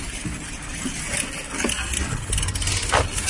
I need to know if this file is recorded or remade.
recorded